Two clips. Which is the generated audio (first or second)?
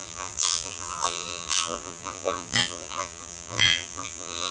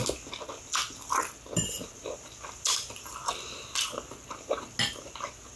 first